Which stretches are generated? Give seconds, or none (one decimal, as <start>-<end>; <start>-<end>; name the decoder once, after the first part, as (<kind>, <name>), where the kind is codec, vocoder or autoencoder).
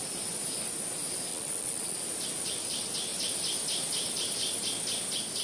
1.3-2.0 (vocoder, Vocos)